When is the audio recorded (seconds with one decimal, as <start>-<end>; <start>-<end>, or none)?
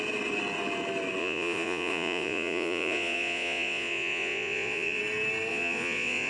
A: 0.0-1.2; 5.0-5.5